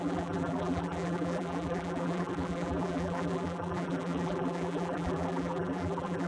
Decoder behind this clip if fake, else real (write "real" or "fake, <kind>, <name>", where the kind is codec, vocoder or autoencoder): fake, vocoder, BigVGAN v2